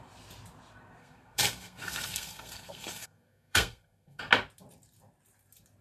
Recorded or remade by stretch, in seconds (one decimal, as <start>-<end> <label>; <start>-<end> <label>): 0.0-1.0 recorded; 1.0-4.3 remade; 4.3-5.8 recorded